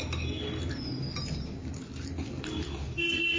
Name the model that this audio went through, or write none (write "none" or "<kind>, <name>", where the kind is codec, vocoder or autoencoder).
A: none